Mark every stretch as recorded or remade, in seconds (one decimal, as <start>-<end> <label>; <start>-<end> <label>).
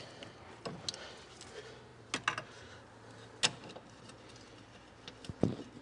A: 0.0-5.8 recorded